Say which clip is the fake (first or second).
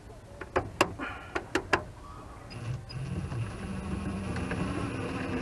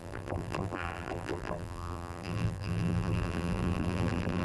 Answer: second